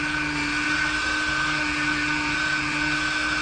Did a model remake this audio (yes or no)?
no